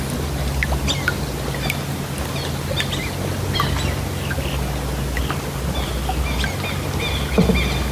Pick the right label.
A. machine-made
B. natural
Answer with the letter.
B